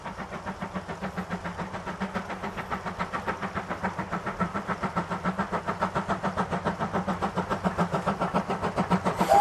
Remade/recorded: recorded